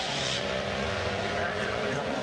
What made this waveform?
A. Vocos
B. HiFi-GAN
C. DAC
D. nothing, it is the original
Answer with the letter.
A